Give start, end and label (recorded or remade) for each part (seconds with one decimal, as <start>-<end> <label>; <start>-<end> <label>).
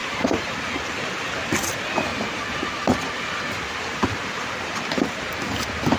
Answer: 0.0-1.1 remade; 1.1-2.1 recorded; 2.1-5.3 remade; 5.3-6.0 recorded